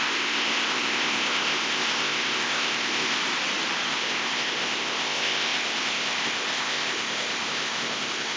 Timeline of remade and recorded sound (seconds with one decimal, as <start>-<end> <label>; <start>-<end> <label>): 0.0-3.2 remade; 3.2-3.9 recorded; 3.9-8.4 remade